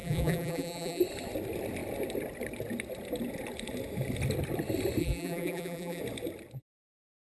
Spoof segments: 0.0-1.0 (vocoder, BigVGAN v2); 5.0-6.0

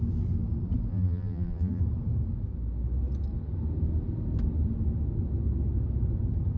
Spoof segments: 0.9-1.8 (vocoder, BigVGAN v2)

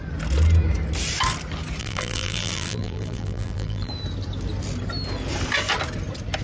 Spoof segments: 1.8-3.9 (vocoder, BigVGAN v2)

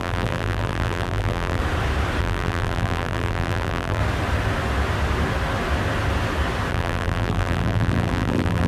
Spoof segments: 0.0-1.6 (vocoder, BigVGAN v2); 2.2-4.0; 6.7-8.7